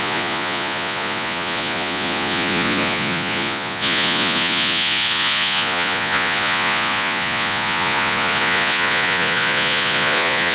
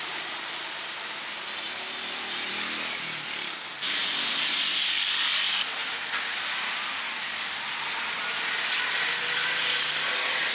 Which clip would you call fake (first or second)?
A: first